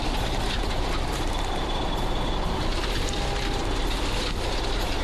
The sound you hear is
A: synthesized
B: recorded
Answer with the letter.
A